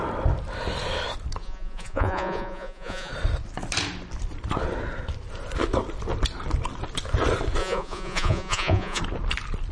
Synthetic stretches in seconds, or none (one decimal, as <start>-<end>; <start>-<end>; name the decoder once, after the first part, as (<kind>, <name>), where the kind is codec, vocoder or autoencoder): 1.4-3.1 (vocoder, Vocos); 7.6-9.0